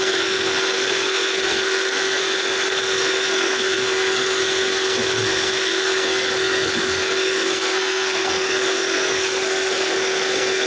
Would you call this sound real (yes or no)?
no